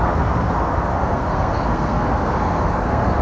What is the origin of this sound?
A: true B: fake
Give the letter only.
B